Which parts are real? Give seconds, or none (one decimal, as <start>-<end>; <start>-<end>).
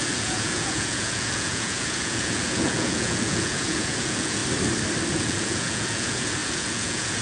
4.4-5.2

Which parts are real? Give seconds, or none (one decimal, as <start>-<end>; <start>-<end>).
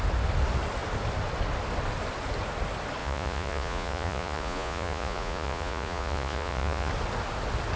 0.0-3.0; 6.9-7.8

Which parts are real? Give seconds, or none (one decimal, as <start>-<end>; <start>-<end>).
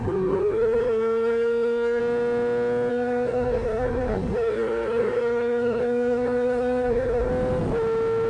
2.0-2.9; 7.3-8.3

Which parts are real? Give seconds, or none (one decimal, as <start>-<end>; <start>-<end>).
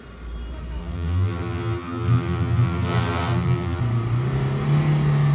0.0-0.8; 3.8-5.3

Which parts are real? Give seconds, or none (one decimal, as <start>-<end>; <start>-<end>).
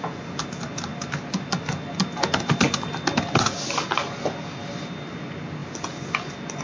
0.0-6.6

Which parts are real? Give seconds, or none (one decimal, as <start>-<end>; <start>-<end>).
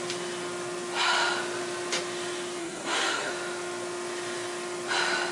0.0-2.6; 3.3-5.3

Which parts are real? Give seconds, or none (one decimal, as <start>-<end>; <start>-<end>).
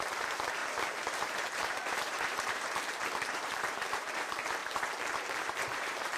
4.6-5.4